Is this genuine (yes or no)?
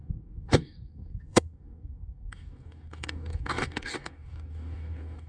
no